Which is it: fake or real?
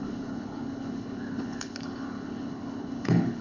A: fake